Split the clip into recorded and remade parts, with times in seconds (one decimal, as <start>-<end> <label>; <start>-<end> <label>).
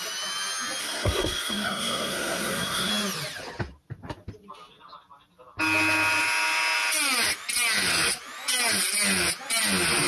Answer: 0.0-0.8 recorded; 0.8-2.9 remade; 2.9-10.1 recorded